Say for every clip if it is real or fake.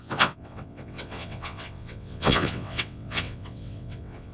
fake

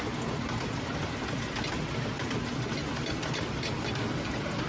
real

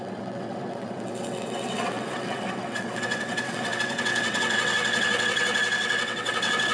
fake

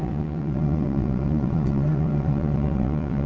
fake